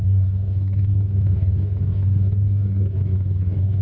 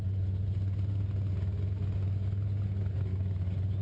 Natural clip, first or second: second